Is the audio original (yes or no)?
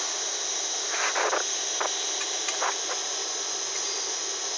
yes